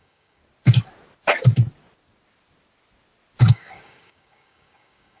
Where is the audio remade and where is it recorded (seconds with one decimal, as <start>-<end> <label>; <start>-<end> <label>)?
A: 0.0-0.4 remade; 0.4-3.5 recorded; 3.5-5.2 remade